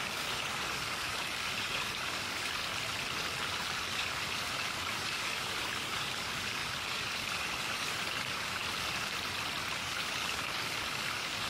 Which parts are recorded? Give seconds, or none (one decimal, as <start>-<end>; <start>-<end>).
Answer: 2.6-3.8; 8.6-9.8